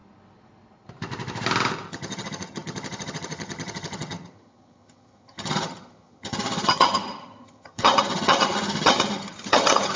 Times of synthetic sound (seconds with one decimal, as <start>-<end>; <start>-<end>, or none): 1.9-10.0